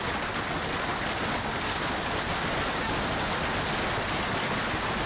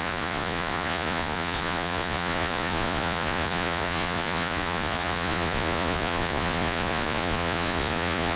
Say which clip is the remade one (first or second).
second